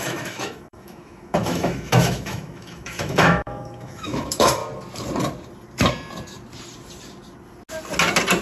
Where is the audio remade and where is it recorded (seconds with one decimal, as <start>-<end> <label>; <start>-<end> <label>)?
0.0-4.6 remade; 4.6-8.4 recorded